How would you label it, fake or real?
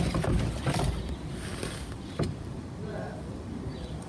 fake